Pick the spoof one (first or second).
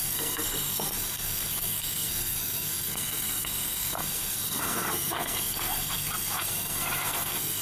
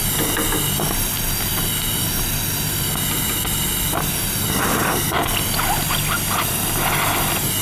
first